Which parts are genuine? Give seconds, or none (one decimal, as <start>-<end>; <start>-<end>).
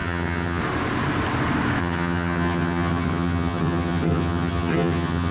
0.6-1.8